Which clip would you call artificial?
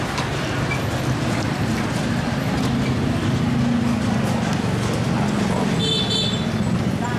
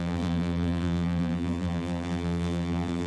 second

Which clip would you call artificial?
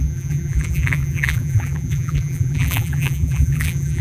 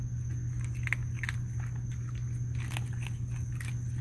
first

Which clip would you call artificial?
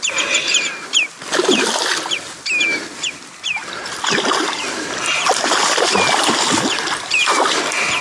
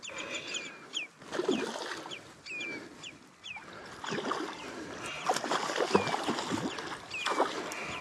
first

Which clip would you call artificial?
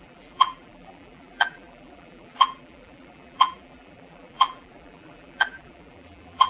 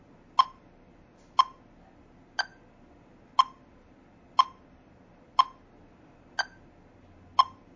first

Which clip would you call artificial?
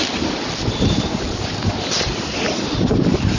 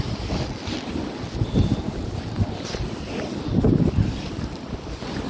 first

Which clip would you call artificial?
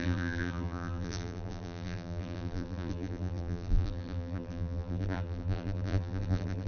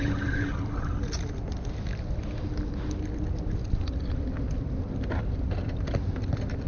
first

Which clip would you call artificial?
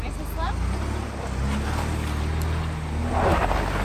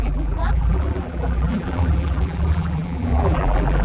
second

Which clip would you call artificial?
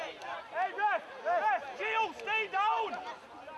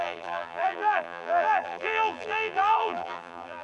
second